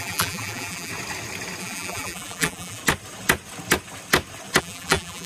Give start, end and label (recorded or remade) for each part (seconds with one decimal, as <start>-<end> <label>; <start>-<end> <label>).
0.0-0.9 remade; 0.9-1.6 recorded; 1.6-2.8 remade; 2.8-4.6 recorded; 4.6-5.3 remade